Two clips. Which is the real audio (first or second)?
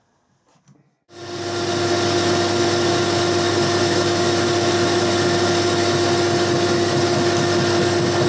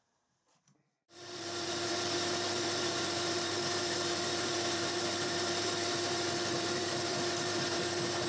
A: first